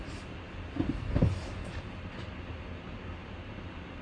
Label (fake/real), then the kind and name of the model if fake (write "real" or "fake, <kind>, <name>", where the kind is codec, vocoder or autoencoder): real